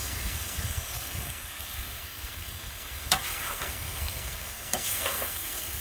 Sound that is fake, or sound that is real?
fake